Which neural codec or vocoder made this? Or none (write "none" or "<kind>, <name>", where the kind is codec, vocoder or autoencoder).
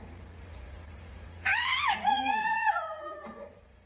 vocoder, Vocos